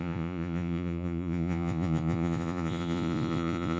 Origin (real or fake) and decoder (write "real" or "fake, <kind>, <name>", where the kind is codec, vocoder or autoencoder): fake, vocoder, Vocos